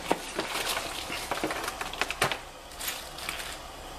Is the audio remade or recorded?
recorded